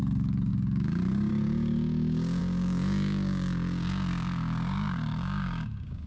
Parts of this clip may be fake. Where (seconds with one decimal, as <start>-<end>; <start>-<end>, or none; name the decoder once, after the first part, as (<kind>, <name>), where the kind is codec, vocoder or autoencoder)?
0.0-6.1 (codec, DAC)